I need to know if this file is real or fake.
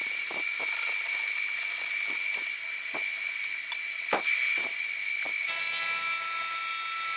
real